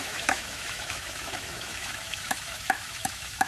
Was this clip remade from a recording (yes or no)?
yes